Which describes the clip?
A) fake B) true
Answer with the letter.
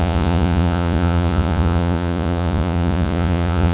A